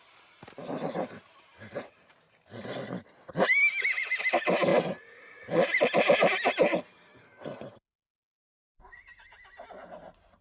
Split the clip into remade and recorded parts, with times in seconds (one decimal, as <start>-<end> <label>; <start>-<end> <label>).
0.0-2.6 remade; 2.6-3.3 recorded; 3.3-4.7 remade; 4.7-6.3 recorded; 6.3-7.1 remade; 7.1-7.6 recorded; 7.6-10.4 remade